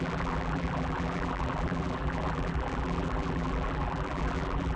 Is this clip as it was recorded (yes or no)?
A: no